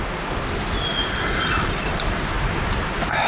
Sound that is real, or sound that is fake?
real